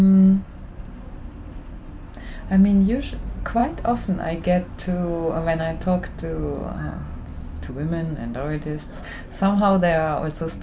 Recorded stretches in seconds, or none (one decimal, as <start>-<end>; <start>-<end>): 0.0-10.6